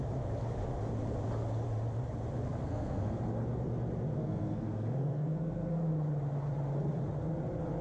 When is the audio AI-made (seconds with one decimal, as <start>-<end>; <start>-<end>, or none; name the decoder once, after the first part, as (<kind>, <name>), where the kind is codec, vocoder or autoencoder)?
2.6-3.2 (codec, SNAC); 4.1-5.9